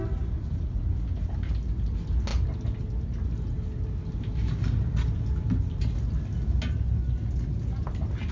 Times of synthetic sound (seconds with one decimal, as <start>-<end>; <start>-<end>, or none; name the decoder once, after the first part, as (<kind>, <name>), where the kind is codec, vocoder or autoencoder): none

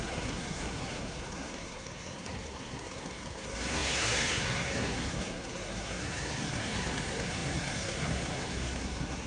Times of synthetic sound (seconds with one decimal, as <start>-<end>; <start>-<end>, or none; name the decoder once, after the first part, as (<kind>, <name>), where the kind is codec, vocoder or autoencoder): 0.0-9.3 (codec, SNAC)

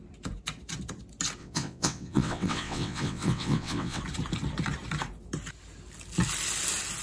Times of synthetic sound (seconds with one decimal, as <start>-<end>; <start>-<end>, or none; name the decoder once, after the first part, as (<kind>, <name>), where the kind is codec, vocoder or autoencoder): 1.4-4.0 (vocoder, WaveNeXt)

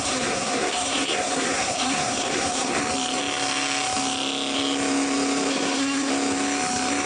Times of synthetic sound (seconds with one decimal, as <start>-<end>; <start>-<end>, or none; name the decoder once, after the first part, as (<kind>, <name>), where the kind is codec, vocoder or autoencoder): 0.0-2.8 (codec, SNAC); 5.5-6.1

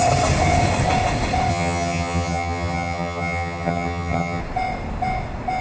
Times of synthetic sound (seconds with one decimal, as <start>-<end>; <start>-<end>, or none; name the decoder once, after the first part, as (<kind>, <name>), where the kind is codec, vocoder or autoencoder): 1.5-4.4 (vocoder, HiFi-GAN)

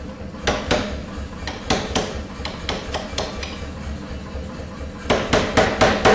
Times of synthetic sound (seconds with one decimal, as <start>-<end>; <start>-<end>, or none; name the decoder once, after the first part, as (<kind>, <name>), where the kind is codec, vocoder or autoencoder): 1.0-4.7 (vocoder, BigVGAN v2)

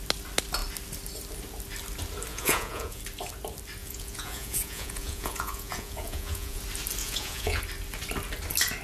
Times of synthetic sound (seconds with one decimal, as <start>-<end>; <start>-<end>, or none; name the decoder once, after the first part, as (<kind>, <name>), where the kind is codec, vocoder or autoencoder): 2.3-3.0 (vocoder, Vocos); 3.8-6.6; 7.0-7.6

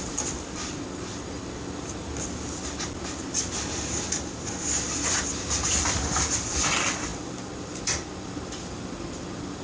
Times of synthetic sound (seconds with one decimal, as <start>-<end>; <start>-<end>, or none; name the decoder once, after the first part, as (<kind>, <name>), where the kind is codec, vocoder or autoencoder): none